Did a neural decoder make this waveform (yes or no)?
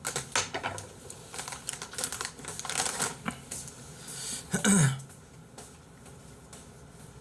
no